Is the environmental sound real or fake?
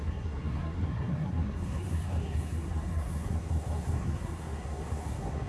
fake